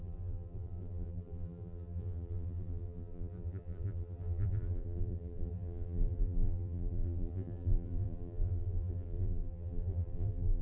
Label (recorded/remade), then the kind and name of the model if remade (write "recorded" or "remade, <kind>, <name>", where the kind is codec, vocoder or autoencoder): remade, vocoder, BigVGAN v2